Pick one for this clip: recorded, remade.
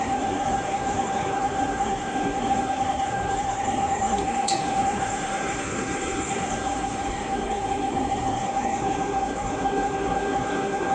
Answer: remade